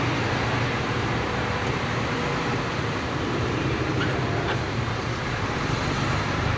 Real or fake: fake